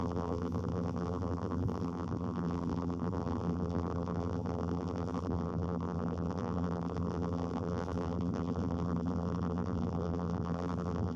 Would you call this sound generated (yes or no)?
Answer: yes